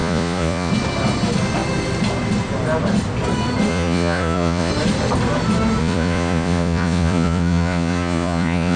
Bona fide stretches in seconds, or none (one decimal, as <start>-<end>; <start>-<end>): 0.7-3.7; 4.7-5.8